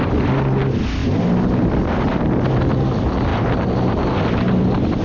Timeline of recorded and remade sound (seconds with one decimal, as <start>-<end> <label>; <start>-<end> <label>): 0.0-5.0 recorded